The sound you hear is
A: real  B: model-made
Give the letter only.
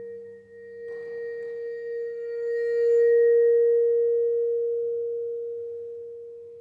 A